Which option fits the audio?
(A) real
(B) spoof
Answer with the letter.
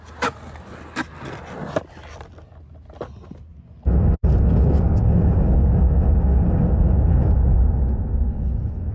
A